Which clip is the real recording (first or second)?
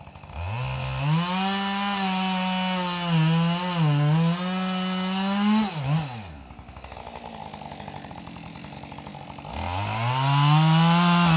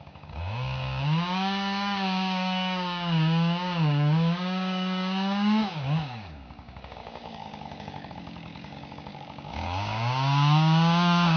first